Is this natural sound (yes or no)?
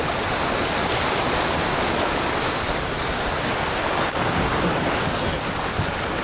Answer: yes